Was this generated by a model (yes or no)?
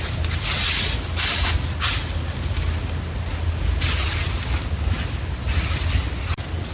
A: no